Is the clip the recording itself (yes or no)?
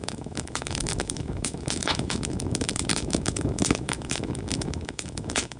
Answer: no